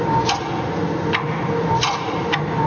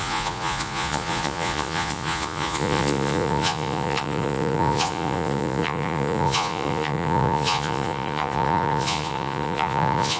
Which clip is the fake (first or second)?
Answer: second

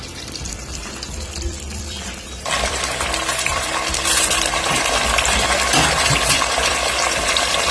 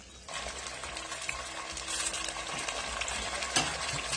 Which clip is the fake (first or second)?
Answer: first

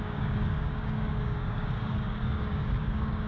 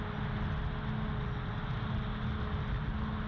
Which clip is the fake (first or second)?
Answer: first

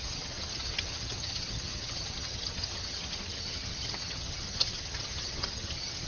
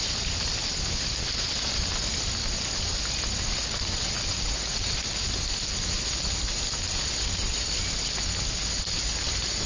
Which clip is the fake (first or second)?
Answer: first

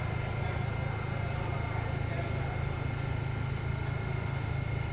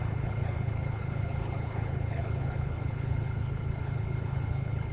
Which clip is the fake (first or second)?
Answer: second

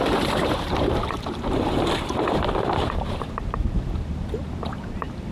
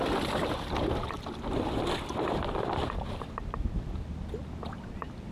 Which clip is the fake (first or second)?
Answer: first